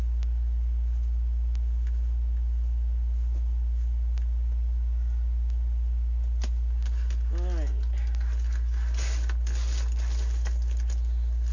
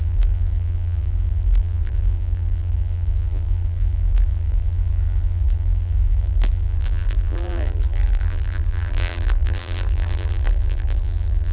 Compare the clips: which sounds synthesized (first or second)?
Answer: second